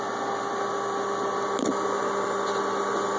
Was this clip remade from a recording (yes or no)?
no